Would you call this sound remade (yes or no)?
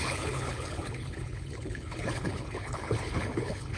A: yes